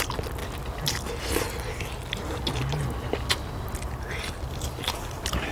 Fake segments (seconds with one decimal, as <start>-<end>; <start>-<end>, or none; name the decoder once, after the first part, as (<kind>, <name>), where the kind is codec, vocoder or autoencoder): none